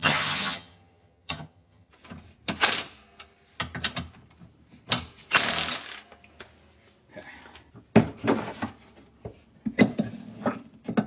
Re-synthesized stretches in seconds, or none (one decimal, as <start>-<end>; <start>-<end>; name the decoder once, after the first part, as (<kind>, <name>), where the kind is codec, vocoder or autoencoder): 0.0-1.9 (vocoder, HiFi-GAN)